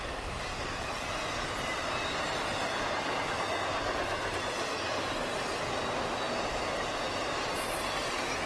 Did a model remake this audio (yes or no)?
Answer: no